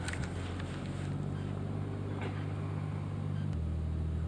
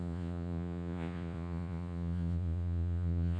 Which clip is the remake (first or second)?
second